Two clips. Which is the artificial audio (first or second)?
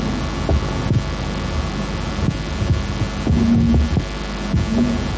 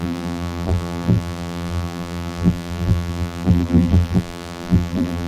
second